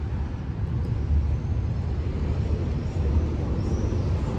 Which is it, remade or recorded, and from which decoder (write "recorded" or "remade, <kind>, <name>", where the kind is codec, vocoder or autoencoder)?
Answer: recorded